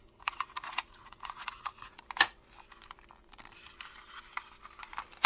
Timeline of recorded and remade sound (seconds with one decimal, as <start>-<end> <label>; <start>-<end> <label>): 0.0-2.0 remade; 2.0-5.3 recorded